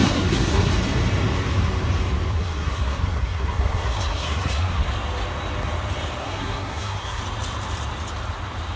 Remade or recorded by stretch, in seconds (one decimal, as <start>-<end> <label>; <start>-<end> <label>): 0.0-0.7 remade; 0.7-2.3 recorded; 2.3-4.9 remade; 4.9-6.2 recorded; 6.2-7.2 remade; 7.2-8.8 recorded